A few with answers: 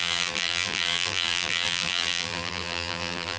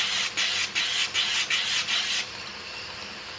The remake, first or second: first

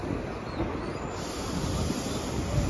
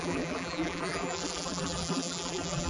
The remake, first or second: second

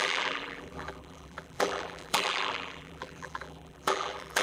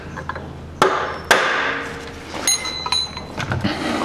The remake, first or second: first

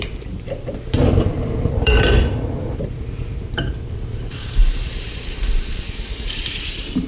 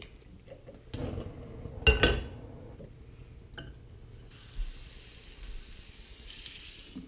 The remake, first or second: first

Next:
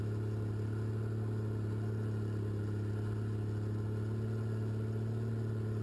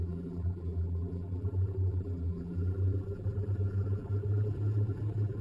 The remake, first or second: second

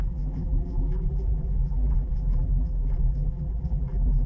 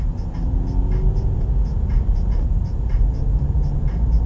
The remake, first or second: first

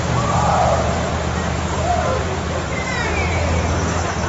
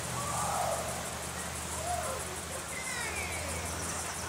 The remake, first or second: first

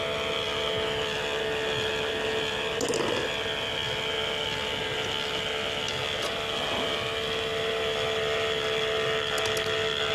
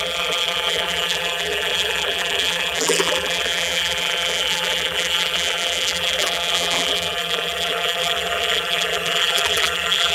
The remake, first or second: second